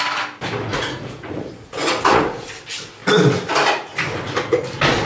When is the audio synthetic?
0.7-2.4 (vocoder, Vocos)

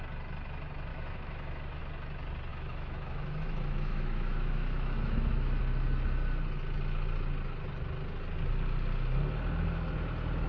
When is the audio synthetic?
0.9-1.8 (autoencoder, DAC-VAE); 2.5-5.6

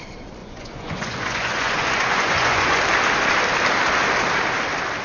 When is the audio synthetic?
0.4-2.8 (vocoder, Vocos)

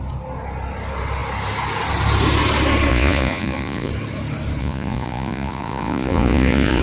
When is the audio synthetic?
2.9-3.9 (vocoder, Vocos); 4.6-6.8

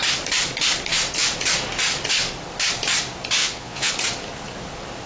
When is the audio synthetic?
3.4-3.9 (vocoder, Vocos)

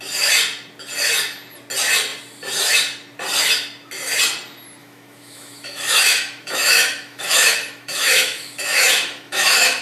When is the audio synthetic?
4.8-9.8 (autoencoder, DAC-VAE)

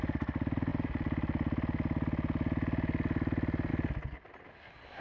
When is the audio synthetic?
none